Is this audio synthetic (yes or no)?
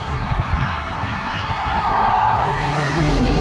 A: yes